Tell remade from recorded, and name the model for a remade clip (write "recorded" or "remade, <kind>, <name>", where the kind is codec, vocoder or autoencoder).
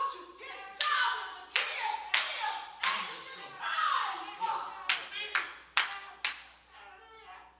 recorded